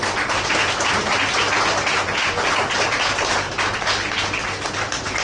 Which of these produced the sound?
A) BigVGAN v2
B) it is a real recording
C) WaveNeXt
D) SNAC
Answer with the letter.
B